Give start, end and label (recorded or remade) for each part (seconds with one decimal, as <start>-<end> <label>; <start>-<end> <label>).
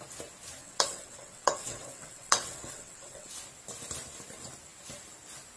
0.0-0.6 recorded; 0.6-3.3 remade; 3.3-5.6 recorded